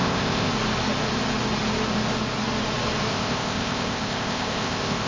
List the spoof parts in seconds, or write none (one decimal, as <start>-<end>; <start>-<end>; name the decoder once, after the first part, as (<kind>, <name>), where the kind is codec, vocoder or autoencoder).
0.0-0.5 (codec, ZipCodec); 3.1-5.1